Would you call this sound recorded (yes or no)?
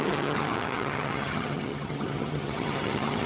no